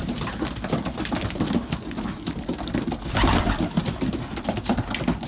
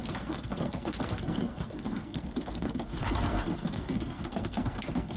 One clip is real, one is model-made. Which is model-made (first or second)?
second